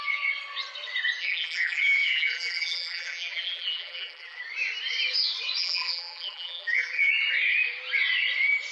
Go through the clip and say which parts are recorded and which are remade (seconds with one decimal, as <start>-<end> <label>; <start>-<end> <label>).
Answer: 0.0-1.2 recorded; 1.2-4.4 remade; 4.4-5.6 recorded; 5.6-7.1 remade; 7.1-8.7 recorded